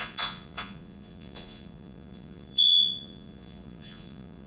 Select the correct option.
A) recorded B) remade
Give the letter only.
B